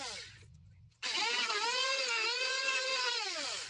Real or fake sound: fake